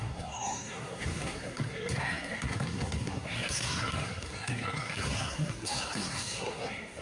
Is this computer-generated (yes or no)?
yes